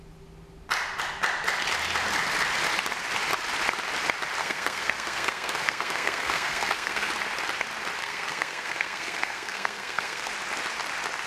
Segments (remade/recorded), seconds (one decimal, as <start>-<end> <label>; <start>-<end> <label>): 0.0-4.4 recorded; 4.4-7.1 remade; 7.1-8.0 recorded; 8.0-10.3 remade; 10.3-11.3 recorded